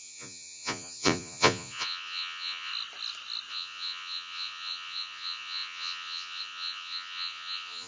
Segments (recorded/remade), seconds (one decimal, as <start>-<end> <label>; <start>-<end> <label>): 0.0-2.7 remade; 2.7-3.5 recorded; 3.5-7.9 remade

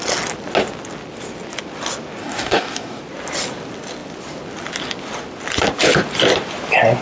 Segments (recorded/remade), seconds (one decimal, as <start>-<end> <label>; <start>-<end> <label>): 0.0-2.2 recorded; 2.2-3.0 remade; 3.0-7.0 recorded

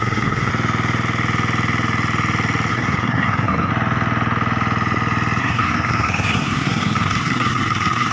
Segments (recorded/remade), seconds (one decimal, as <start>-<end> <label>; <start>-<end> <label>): 0.0-0.5 remade; 0.5-2.7 recorded; 2.7-3.7 remade; 3.7-5.4 recorded; 5.4-8.1 remade

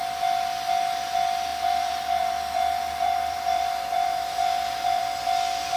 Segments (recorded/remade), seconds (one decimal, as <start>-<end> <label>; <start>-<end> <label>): 0.0-1.5 recorded; 1.5-5.0 remade; 5.0-5.8 recorded

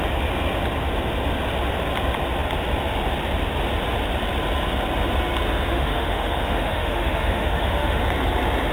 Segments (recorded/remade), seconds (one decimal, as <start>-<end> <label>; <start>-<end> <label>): 0.0-5.7 recorded; 5.7-8.0 remade; 8.0-8.7 recorded

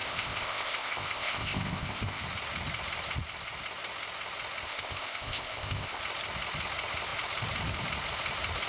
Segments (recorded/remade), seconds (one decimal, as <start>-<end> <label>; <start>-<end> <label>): 0.0-2.2 remade; 2.2-4.7 recorded; 4.7-6.0 remade; 6.0-8.7 recorded

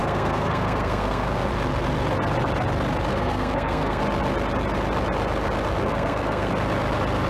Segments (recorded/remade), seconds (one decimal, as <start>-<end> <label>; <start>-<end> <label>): 0.0-1.5 remade; 1.5-3.1 recorded; 3.1-4.0 remade; 4.0-5.8 recorded; 5.8-6.5 remade; 6.5-7.3 recorded